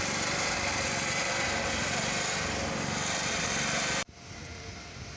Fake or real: real